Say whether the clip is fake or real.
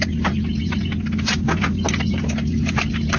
real